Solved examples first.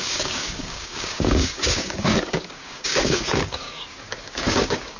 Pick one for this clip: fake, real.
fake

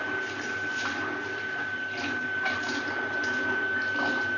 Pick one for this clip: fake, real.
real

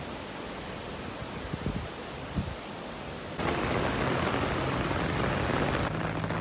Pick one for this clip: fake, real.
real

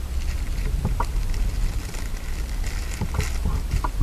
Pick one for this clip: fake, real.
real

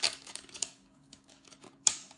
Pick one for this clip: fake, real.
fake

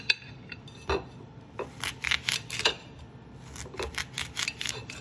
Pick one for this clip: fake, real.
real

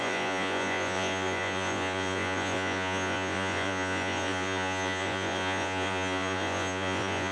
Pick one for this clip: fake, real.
fake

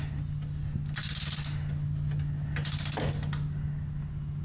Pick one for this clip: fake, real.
real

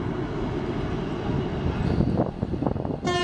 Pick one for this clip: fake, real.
real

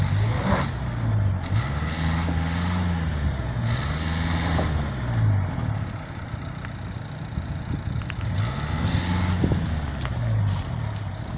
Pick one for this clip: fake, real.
real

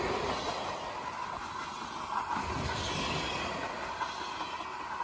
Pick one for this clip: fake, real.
real